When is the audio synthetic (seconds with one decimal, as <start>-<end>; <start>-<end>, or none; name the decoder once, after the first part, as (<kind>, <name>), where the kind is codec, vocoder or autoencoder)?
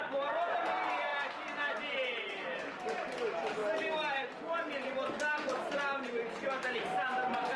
none